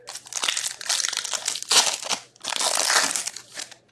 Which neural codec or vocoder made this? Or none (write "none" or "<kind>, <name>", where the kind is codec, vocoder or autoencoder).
none